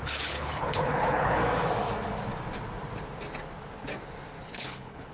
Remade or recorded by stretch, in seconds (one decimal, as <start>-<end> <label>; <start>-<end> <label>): 0.0-1.4 remade; 1.4-4.5 recorded; 4.5-5.1 remade